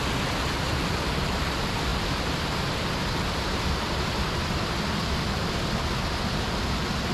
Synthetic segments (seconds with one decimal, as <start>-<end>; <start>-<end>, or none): none